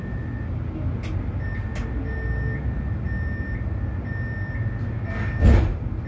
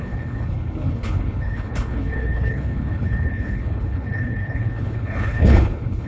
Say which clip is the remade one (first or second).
second